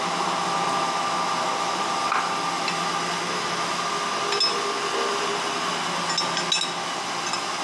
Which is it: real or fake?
real